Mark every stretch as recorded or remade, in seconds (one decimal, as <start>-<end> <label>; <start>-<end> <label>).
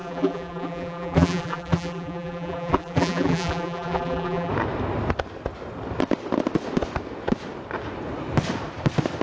0.0-4.5 remade; 4.5-9.2 recorded